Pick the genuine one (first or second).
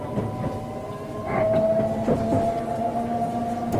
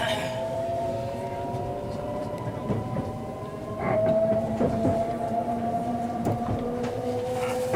first